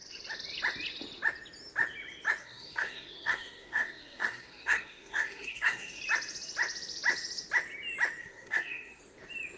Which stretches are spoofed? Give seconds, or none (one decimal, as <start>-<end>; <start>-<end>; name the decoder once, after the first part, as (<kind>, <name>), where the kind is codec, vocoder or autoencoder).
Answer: 2.4-6.0 (codec, SNAC); 8.2-9.0